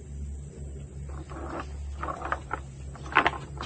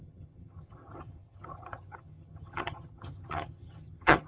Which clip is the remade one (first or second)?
second